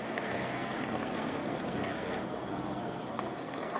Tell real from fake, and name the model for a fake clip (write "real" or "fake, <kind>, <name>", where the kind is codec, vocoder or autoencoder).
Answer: fake, codec, SNAC